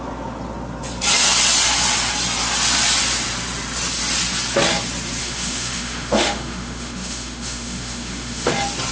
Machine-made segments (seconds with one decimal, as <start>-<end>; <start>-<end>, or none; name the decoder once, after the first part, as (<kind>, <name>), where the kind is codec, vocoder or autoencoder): 5.2-8.5 (autoencoder, DAC-VAE)

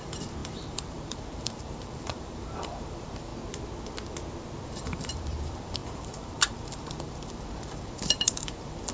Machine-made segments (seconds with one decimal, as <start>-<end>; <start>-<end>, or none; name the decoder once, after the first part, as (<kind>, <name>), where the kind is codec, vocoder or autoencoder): 0.0-3.3 (vocoder, BigVGAN v2); 4.8-8.9